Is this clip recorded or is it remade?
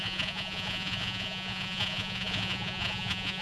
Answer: remade